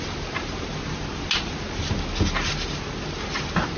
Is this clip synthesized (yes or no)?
no